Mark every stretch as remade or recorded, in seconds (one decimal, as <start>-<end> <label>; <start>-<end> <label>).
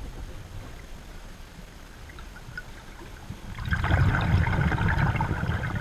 0.0-1.1 recorded; 1.1-4.6 remade; 4.6-5.8 recorded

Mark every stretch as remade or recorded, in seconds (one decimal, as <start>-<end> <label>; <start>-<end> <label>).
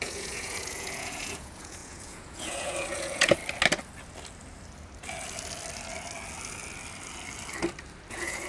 0.0-3.4 remade; 3.4-8.1 recorded; 8.1-8.5 remade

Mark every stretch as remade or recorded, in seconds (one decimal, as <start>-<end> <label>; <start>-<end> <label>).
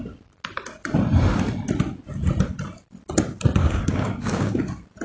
0.0-3.6 recorded; 3.6-4.6 remade; 4.6-5.0 recorded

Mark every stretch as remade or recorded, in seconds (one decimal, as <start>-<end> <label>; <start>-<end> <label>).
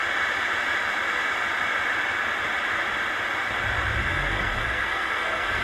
0.0-4.0 recorded; 4.0-5.6 remade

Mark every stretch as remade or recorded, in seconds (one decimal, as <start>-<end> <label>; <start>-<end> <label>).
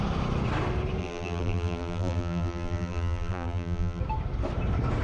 0.0-1.0 recorded; 1.0-4.0 remade; 4.0-5.0 recorded